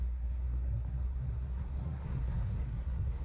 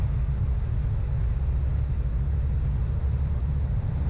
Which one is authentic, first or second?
second